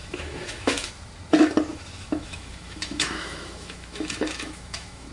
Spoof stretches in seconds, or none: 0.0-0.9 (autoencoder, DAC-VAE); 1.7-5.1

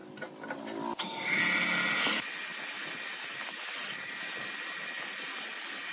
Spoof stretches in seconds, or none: none

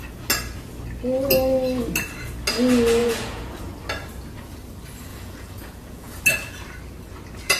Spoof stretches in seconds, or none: 3.0-3.6 (vocoder, Vocos); 5.1-6.2